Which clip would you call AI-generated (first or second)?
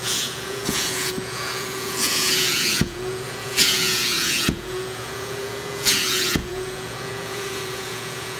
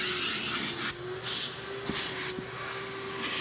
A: first